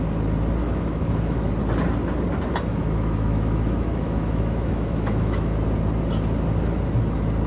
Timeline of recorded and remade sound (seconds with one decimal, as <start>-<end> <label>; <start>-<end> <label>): 0.0-0.6 recorded; 0.6-1.5 remade; 1.5-2.7 recorded; 2.7-5.6 remade; 5.6-7.5 recorded